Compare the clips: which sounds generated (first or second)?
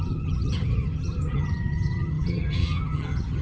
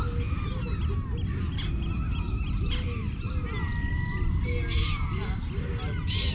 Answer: first